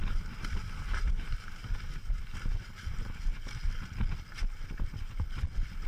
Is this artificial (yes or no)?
no